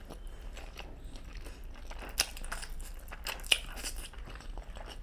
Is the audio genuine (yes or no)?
yes